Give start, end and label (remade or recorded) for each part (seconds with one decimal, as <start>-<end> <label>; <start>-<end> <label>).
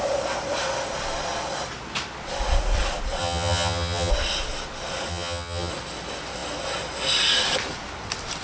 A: 0.0-3.2 recorded; 3.2-4.1 remade; 4.1-5.1 recorded; 5.1-5.7 remade; 5.7-8.4 recorded